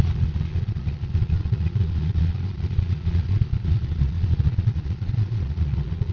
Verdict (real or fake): fake